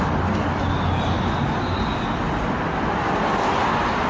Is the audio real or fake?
real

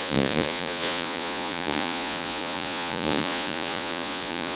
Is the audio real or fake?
fake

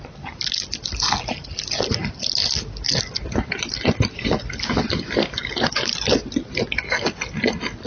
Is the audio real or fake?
real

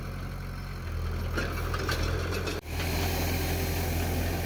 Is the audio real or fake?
real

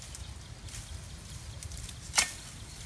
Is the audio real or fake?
real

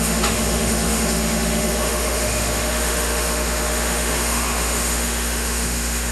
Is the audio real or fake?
fake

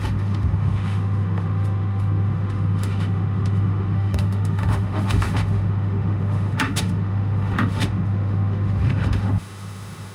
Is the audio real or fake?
fake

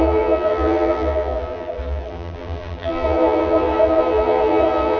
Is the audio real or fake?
fake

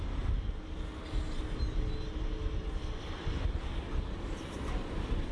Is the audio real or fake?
real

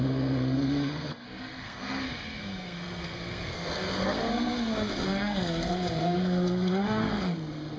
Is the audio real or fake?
fake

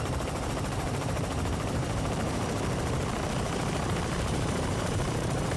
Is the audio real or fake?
fake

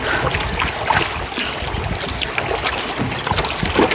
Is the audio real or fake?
real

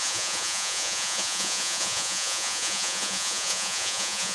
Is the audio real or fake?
fake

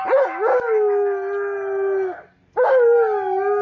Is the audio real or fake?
real